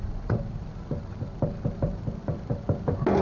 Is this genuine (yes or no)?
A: yes